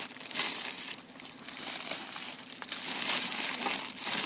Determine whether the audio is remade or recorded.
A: recorded